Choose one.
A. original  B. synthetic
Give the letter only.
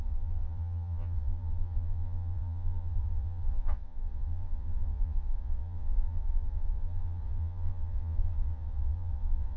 B